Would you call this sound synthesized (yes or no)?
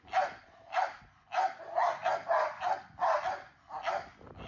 no